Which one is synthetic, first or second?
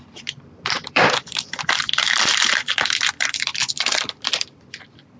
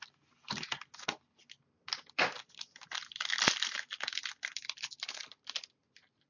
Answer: first